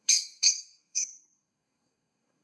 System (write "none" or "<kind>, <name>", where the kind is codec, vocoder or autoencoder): codec, SNAC